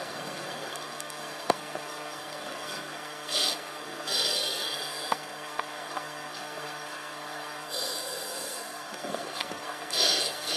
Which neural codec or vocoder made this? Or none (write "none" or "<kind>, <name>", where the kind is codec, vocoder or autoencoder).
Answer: codec, SNAC